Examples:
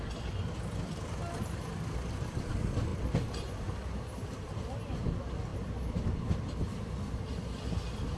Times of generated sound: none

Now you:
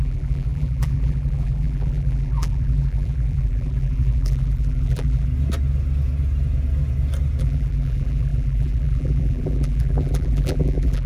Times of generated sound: 0.0-5.3 (vocoder, BigVGAN v2); 7.4-11.1

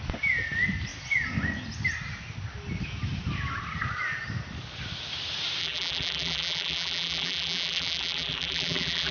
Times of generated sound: 5.6-9.1 (vocoder, BigVGAN v2)